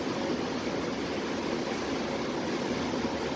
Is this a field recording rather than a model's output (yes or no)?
yes